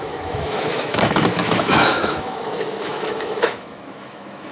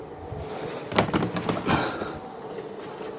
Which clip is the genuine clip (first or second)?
second